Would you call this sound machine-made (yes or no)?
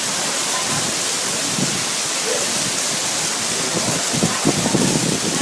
no